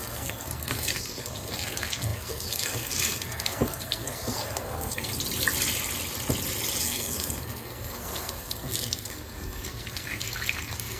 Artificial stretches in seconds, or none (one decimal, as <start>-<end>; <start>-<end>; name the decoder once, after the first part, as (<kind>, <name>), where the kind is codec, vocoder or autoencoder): 0.0-5.1 (codec, SNAC); 6.8-11.0